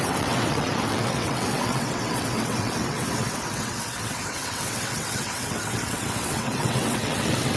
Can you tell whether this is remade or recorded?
remade